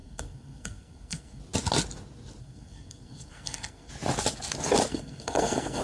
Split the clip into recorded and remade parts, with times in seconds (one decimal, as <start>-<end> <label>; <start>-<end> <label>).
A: 0.0-1.4 remade; 1.4-2.4 recorded; 2.4-3.9 remade; 3.9-4.9 recorded; 4.9-5.8 remade